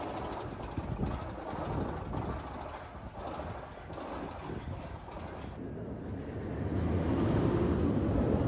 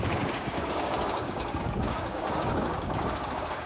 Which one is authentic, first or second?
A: first